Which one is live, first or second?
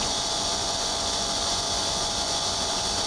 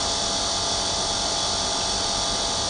second